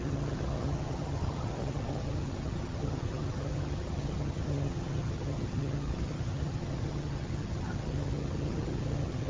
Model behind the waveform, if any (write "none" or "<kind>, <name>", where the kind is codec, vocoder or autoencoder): vocoder, HiFi-GAN